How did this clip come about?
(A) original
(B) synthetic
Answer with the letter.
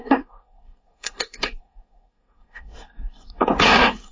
B